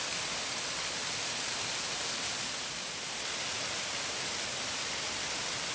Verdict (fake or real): real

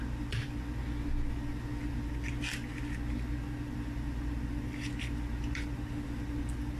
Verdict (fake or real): real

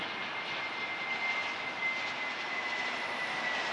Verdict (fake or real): real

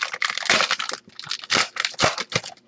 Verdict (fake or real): real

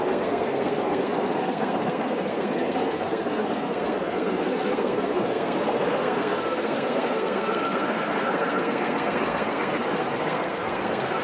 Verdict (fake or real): fake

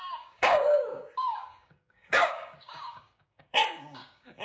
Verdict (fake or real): fake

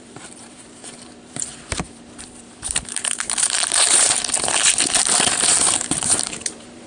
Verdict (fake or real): fake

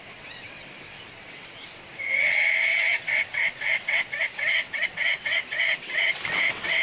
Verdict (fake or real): fake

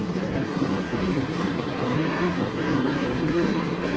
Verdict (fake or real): fake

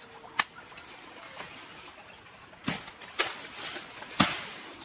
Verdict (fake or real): real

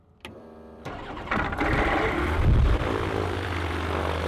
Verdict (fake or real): fake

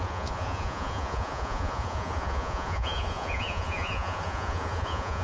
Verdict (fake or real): fake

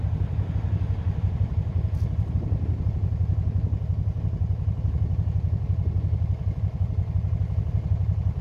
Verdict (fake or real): real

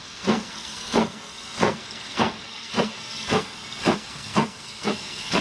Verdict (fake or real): fake